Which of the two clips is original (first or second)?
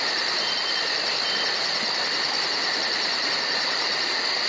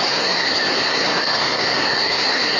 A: first